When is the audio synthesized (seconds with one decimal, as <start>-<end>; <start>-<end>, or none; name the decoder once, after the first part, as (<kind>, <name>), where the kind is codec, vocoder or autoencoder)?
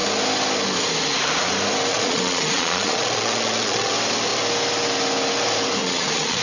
1.9-3.9 (vocoder, Vocos); 5.8-6.4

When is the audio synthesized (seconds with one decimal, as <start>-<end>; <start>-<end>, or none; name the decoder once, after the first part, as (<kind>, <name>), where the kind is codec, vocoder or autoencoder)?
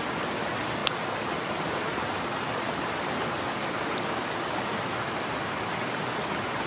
0.8-2.9 (vocoder, BigVGAN v2)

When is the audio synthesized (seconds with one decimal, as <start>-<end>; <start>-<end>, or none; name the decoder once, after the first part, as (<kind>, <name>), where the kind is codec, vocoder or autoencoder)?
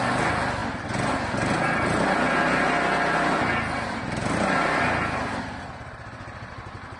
none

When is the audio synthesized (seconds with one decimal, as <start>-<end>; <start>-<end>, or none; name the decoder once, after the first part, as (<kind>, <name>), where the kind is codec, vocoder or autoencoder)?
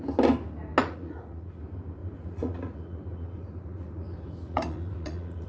0.8-1.6 (vocoder, Vocos); 2.0-5.5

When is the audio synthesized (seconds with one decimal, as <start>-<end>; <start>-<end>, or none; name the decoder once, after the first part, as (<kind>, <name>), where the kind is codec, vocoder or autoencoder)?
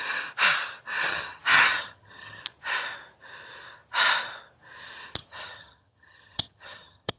1.1-2.4 (vocoder, HiFi-GAN); 5.2-7.2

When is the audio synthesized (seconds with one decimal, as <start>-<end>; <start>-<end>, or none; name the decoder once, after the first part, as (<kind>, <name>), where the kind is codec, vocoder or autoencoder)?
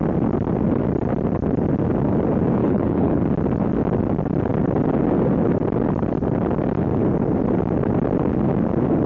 2.6-3.2 (codec, HILCodec)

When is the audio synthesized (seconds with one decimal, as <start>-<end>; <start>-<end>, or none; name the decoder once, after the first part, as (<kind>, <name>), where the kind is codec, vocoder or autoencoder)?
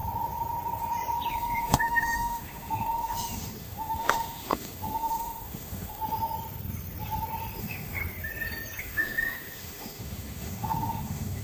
1.3-6.0 (autoencoder, DAC-VAE); 7.6-8.0; 8.8-11.4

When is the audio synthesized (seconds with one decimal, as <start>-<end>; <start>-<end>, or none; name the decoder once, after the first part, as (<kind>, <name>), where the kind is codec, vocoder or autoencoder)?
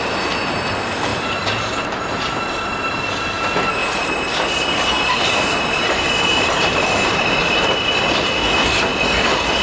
1.1-3.1 (vocoder, BigVGAN v2); 3.8-8.0; 8.9-9.6